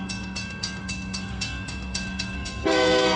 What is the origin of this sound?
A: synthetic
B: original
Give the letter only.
A